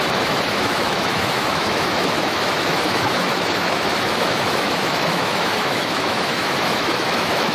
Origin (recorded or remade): remade